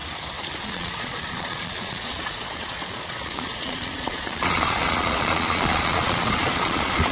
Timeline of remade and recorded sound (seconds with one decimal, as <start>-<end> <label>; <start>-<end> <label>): 0.0-0.6 recorded; 0.6-7.1 remade